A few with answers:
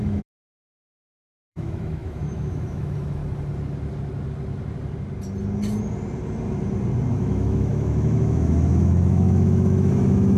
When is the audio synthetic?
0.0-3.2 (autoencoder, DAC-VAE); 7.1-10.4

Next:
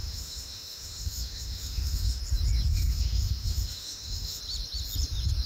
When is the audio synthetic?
0.0-2.2 (autoencoder, DAC-VAE); 2.7-4.4

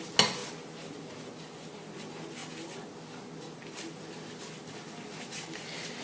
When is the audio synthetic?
none

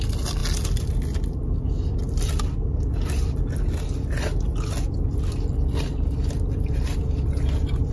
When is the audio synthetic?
none

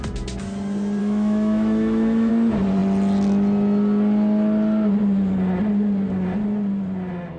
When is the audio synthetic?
1.0-2.3 (autoencoder, DAC-VAE)

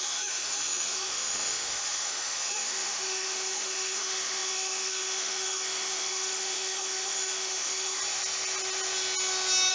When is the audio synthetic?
0.0-8.0 (autoencoder, DAC-VAE)

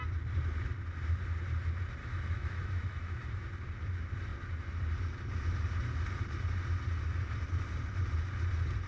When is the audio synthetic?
2.0-3.3 (autoencoder, DAC-VAE)